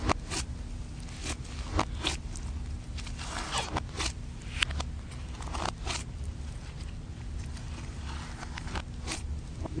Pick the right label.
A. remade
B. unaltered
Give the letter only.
B